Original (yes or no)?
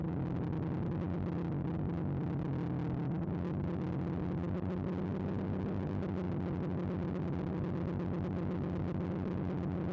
yes